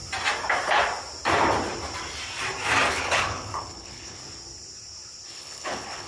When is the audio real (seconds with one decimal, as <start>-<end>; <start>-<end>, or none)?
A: 0.0-2.9; 4.2-5.3